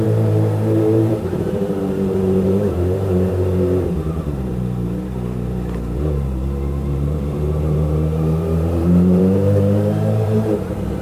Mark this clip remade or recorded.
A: remade